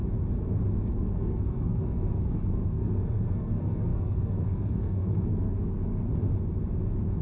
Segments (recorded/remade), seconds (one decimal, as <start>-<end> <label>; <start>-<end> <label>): 0.0-0.9 recorded; 0.9-5.9 remade; 5.9-7.2 recorded